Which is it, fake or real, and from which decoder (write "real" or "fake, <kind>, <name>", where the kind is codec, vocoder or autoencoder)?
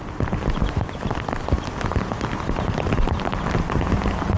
real